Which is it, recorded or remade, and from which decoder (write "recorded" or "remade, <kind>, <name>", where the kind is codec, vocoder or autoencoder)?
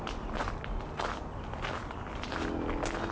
recorded